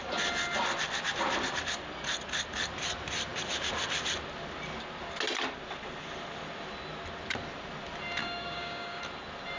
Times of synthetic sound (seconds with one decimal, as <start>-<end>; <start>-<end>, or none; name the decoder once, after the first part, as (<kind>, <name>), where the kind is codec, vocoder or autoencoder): 8.2-9.0 (codec, DAC)